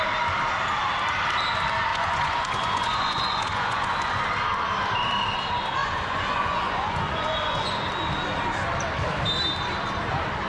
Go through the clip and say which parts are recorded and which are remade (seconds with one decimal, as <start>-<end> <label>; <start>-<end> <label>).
0.0-1.9 recorded; 1.9-4.2 remade; 4.2-5.8 recorded; 5.8-7.9 remade; 7.9-10.5 recorded